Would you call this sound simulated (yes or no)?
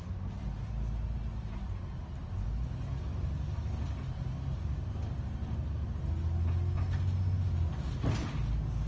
no